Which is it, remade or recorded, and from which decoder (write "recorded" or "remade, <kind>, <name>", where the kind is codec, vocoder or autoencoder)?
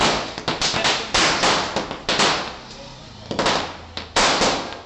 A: recorded